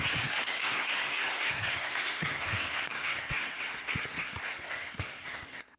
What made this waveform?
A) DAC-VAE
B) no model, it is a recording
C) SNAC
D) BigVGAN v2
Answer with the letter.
C